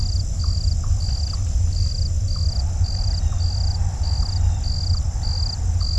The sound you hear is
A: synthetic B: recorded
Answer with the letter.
B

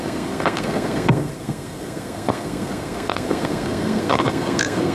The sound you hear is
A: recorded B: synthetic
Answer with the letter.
B